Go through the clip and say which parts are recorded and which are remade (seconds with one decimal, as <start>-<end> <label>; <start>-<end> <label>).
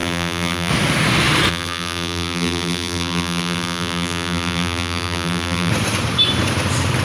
0.0-0.7 remade; 0.7-1.5 recorded; 1.5-5.7 remade; 5.7-7.0 recorded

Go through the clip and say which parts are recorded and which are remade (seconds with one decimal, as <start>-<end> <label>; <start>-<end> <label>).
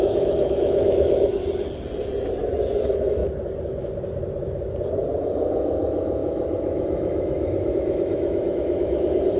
0.0-1.4 remade; 1.4-2.8 recorded; 2.8-3.2 remade; 3.2-5.2 recorded; 5.2-9.4 remade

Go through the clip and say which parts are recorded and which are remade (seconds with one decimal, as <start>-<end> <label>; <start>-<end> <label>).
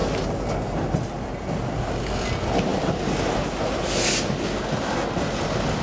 0.0-5.8 recorded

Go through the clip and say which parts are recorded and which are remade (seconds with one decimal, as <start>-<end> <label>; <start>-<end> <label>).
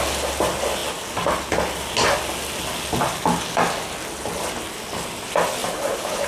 0.0-5.6 recorded; 5.6-6.3 remade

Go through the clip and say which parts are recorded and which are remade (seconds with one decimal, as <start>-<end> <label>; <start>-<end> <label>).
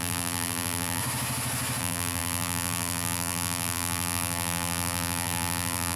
0.0-1.0 remade; 1.0-1.8 recorded; 1.8-6.0 remade